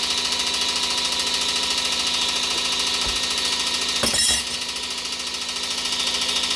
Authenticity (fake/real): real